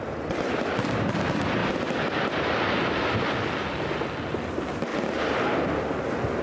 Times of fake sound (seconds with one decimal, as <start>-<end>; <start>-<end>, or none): none